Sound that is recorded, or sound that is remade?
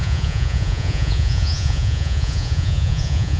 remade